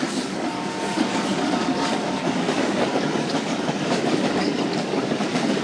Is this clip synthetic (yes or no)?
yes